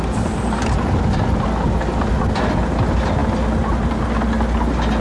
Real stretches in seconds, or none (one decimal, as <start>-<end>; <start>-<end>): 0.0-5.0